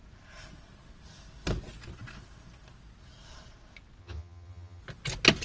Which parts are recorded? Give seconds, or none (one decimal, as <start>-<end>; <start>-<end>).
0.0-4.0; 4.8-5.4